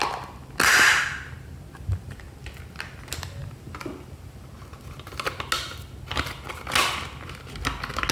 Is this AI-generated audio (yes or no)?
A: no